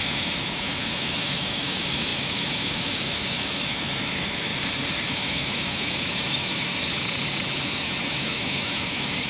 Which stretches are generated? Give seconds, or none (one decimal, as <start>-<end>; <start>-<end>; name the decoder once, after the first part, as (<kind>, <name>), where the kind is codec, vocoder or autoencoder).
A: 0.0-4.5 (autoencoder, DAC-VAE); 5.1-9.3